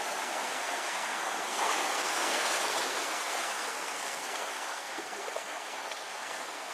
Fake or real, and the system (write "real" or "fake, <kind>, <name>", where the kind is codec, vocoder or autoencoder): fake, codec, SNAC